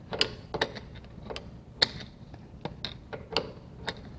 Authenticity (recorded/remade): recorded